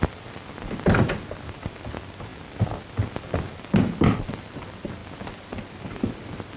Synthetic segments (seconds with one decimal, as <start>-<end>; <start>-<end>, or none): none